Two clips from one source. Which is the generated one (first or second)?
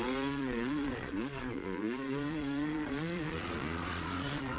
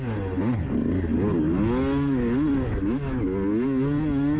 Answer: first